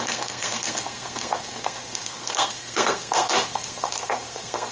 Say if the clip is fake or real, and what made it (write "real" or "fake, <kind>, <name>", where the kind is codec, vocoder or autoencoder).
fake, codec, SNAC